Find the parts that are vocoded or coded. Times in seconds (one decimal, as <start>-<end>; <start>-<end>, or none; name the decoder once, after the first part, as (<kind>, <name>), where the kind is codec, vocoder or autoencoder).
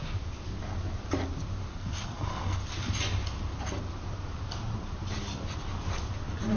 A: 1.7-2.6 (codec, SNAC)